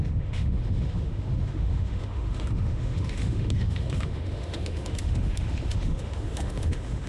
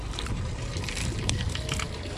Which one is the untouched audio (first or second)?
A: second